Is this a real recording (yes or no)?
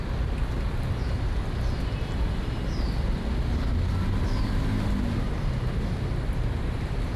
yes